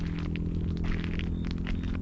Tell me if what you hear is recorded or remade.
recorded